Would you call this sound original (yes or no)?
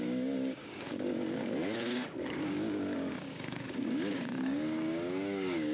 no